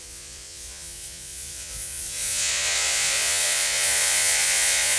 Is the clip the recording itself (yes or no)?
no